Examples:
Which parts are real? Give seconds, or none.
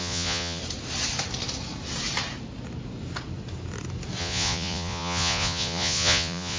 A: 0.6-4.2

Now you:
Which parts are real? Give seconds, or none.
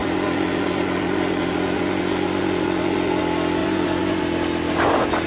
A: 3.2-3.6; 4.2-5.3